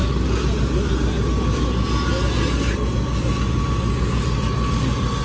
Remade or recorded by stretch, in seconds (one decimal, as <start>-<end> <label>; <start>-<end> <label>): 0.0-5.2 recorded